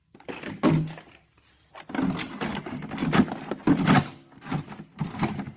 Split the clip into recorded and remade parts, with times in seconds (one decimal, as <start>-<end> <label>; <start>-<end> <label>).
0.0-5.6 recorded